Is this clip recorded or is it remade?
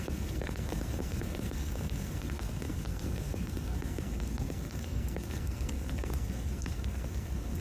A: remade